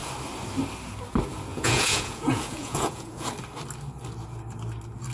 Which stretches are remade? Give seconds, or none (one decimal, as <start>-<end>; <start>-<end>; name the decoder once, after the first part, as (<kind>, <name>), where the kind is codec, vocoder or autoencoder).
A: 1.5-3.3 (vocoder, Vocos)